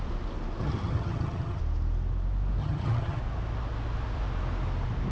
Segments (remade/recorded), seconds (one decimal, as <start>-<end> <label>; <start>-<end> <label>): 0.0-0.6 recorded; 0.6-1.6 remade; 1.6-2.6 recorded; 2.6-3.2 remade; 3.2-5.1 recorded